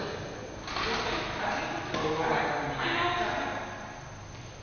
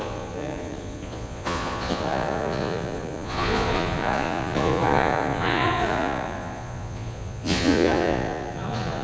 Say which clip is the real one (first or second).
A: first